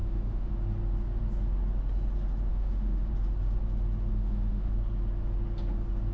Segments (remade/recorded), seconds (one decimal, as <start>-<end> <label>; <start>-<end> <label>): 0.0-0.5 remade; 0.5-2.5 recorded; 2.5-3.1 remade; 3.1-4.1 recorded; 4.1-4.7 remade; 4.7-6.1 recorded